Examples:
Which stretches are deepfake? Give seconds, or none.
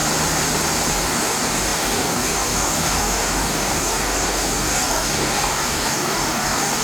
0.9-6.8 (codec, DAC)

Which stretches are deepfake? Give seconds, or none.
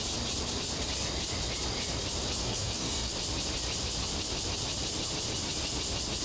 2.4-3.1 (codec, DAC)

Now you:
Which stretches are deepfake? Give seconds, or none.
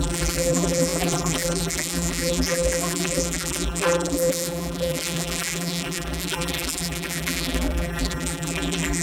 0.0-9.0 (vocoder, BigVGAN v2)